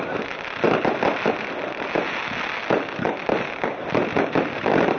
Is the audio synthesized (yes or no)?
no